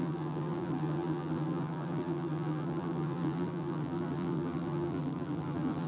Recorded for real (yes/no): no